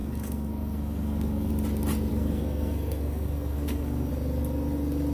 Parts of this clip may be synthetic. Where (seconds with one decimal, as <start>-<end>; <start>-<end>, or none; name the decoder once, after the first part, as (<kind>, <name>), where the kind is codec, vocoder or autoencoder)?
0.0-1.5 (codec, SNAC); 2.1-4.1